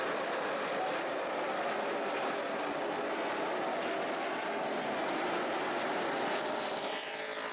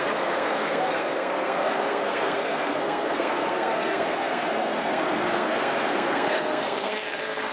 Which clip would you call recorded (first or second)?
first